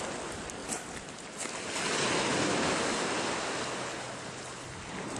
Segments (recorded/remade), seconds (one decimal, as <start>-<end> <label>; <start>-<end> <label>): 0.0-0.6 recorded; 0.6-1.3 remade; 1.3-5.2 recorded